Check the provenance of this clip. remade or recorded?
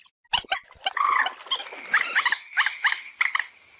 recorded